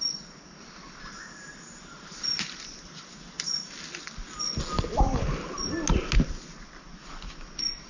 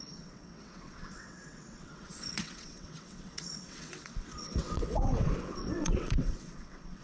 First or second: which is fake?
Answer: second